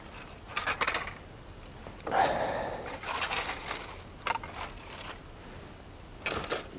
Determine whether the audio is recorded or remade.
recorded